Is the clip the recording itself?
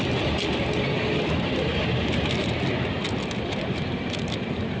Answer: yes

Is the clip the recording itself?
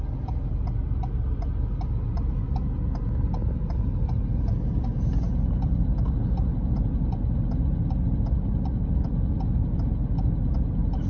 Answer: yes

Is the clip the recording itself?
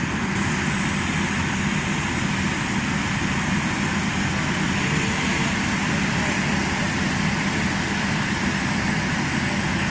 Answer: yes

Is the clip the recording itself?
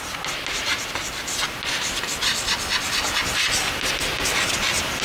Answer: yes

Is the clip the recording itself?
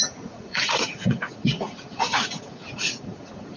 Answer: no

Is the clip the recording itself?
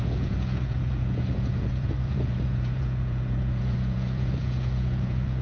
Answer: no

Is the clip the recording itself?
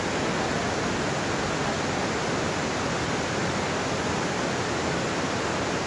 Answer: yes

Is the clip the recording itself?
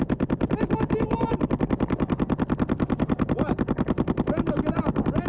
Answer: yes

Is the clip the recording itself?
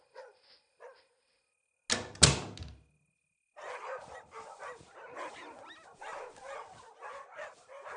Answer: yes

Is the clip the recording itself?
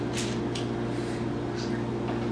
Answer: yes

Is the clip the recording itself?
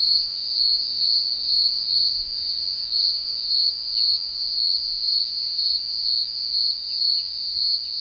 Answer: no